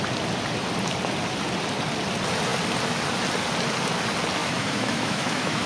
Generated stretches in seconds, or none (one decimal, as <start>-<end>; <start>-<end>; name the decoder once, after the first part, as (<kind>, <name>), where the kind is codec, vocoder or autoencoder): 4.4-5.7 (autoencoder, DAC-VAE)